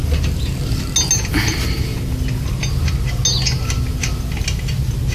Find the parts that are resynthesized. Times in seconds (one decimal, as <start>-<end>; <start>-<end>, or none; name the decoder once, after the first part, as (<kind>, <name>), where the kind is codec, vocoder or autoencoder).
none